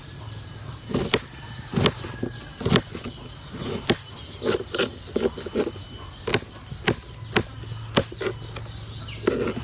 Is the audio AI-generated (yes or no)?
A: no